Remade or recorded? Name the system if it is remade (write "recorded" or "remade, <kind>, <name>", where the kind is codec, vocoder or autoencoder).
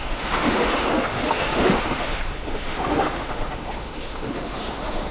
remade, autoencoder, DAC-VAE